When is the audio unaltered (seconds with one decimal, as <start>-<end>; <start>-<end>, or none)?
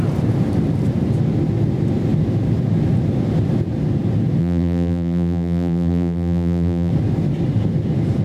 0.0-4.4; 6.9-8.2